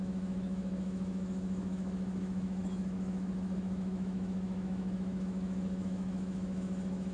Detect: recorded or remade remade